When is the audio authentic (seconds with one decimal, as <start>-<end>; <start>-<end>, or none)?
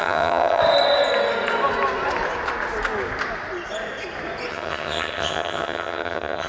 0.6-4.5